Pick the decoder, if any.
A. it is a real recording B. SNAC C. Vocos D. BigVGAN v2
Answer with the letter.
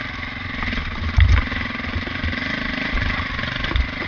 A